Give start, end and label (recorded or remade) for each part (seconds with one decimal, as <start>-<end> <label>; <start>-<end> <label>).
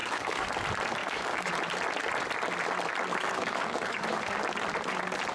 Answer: 0.0-0.5 remade; 0.5-1.0 recorded; 1.0-1.5 remade; 1.5-3.1 recorded; 3.1-4.4 remade; 4.4-5.3 recorded